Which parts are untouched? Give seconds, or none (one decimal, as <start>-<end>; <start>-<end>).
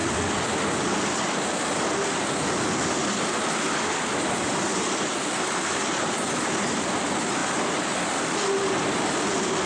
0.0-9.7